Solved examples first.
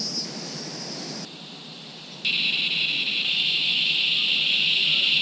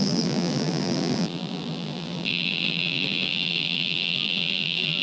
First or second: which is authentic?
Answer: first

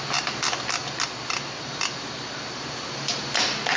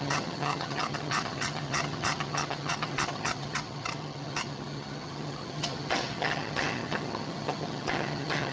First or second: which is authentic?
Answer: first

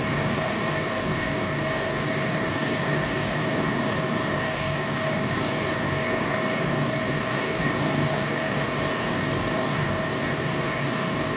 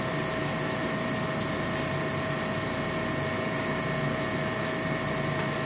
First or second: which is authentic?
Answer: second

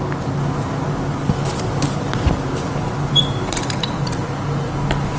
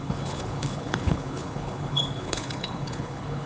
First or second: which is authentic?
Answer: first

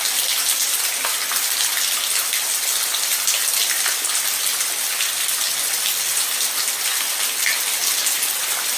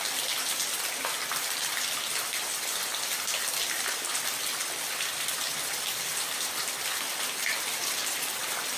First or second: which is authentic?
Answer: first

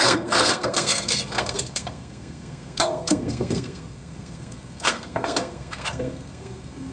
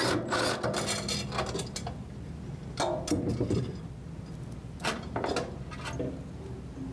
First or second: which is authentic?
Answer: second